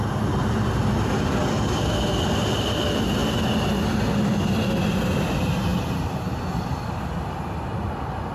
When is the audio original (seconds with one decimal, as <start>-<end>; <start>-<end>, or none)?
0.0-8.3